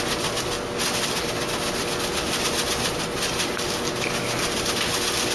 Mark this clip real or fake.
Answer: real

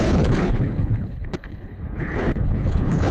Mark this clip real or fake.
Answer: fake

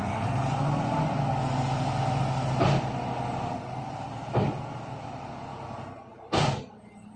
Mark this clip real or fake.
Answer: real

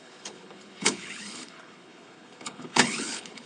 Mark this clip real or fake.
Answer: fake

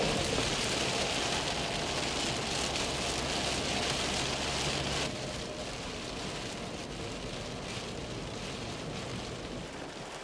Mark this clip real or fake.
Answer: real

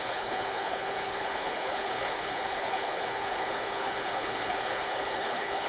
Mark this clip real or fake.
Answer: fake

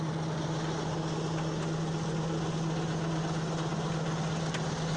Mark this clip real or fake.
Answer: real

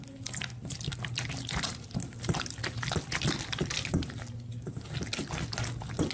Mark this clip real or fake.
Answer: real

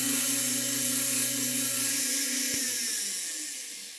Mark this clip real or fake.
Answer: real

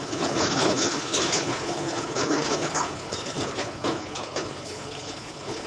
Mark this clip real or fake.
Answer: fake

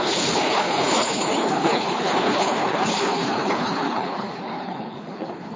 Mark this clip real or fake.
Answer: fake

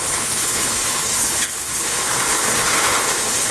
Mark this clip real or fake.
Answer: fake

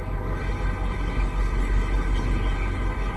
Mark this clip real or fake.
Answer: fake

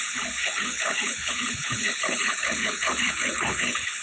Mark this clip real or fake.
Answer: fake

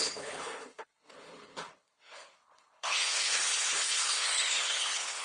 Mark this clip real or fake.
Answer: fake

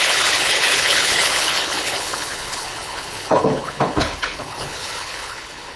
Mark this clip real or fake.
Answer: fake